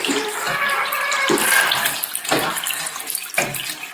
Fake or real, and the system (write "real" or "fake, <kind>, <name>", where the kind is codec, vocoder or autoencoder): fake, vocoder, BigVGAN v2